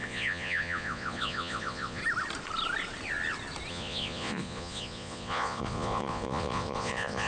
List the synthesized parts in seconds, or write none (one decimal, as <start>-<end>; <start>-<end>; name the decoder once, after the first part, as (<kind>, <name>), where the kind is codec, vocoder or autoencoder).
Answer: 0.0-2.0 (vocoder, Vocos); 3.7-7.3